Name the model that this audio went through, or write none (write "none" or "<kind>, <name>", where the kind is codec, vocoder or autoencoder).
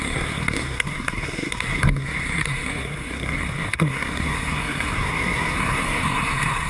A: codec, SNAC